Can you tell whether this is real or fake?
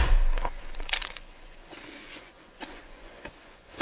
fake